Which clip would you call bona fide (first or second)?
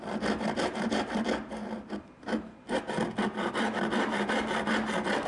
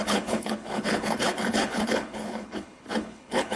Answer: first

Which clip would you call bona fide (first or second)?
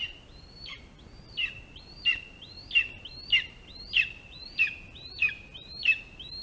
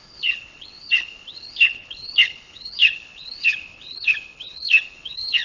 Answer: first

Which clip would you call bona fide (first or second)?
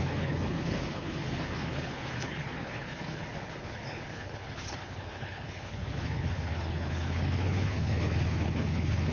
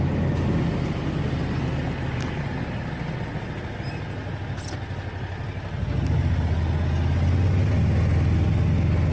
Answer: second